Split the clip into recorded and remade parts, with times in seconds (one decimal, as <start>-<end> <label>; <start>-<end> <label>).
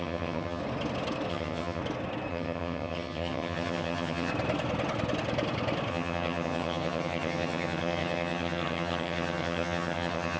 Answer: 0.0-0.6 remade; 0.6-1.3 recorded; 1.3-1.8 remade; 1.8-2.3 recorded; 2.3-4.3 remade; 4.3-5.9 recorded; 5.9-10.4 remade